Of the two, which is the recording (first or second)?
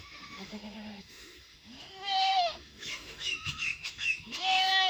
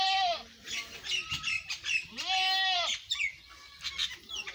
second